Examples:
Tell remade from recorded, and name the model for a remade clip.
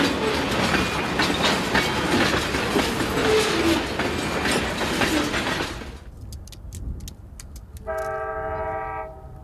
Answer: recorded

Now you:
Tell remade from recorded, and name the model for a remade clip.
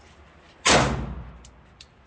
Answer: recorded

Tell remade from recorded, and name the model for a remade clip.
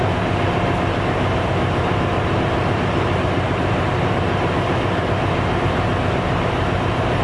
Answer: remade, vocoder, BigVGAN v2